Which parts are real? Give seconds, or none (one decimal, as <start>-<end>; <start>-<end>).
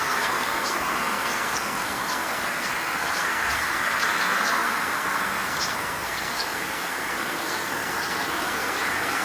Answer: none